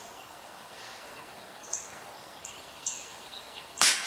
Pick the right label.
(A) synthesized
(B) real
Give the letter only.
A